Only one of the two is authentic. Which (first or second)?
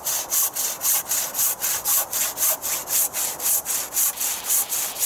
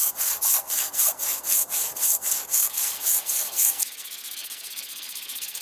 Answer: first